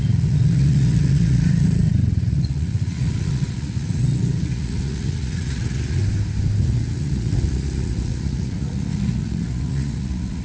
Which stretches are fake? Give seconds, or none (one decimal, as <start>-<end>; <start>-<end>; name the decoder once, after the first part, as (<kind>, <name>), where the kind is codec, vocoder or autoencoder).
0.0-6.0 (vocoder, Vocos); 6.6-10.4